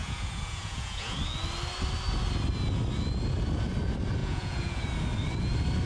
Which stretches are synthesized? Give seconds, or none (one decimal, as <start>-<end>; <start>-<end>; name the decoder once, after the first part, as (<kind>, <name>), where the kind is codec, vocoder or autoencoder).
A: 0.0-1.2 (vocoder, Vocos); 4.2-4.8